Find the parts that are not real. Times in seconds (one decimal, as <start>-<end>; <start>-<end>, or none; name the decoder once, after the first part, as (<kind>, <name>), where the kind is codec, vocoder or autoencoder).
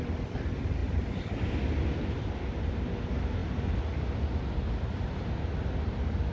none